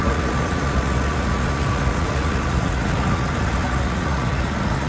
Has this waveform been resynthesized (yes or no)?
yes